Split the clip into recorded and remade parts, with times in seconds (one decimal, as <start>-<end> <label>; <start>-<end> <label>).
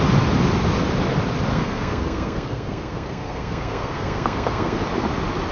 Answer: 0.0-1.5 recorded; 1.5-4.8 remade; 4.8-5.5 recorded